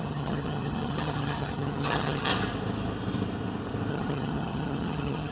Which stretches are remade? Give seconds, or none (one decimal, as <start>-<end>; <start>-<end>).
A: 0.0-2.3; 3.9-5.3